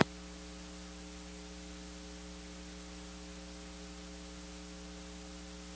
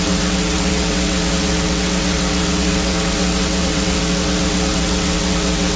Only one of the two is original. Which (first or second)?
first